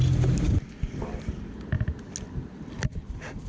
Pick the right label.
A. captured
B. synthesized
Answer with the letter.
A